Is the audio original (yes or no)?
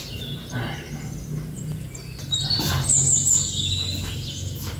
yes